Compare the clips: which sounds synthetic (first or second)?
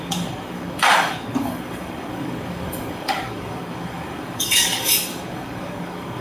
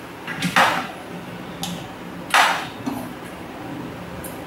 first